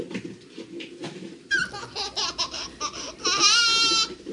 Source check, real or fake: real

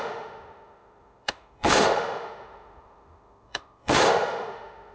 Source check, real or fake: fake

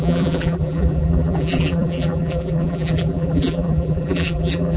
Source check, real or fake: fake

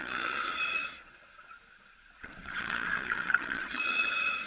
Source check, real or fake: fake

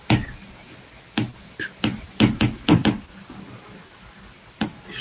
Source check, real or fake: real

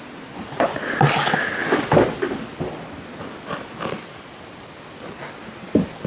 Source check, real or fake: real